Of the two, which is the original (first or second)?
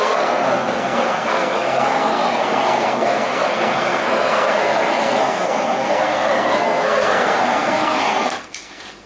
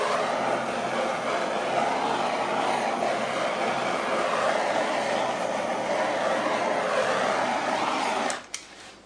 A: second